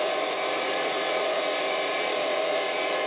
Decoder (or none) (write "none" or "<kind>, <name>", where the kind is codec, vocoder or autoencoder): vocoder, Vocos